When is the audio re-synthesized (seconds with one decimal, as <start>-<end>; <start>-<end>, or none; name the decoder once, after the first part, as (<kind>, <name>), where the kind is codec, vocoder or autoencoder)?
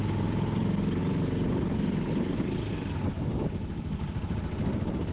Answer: none